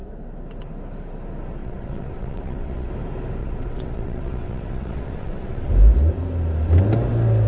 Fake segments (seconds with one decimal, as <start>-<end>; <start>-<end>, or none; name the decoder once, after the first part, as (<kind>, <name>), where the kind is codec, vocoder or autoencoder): 1.6-2.9 (vocoder, WaveNeXt); 3.4-5.7